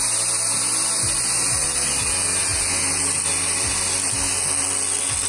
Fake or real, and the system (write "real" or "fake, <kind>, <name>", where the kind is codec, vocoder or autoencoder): real